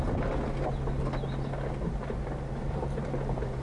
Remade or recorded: recorded